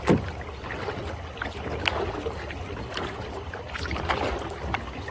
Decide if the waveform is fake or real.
real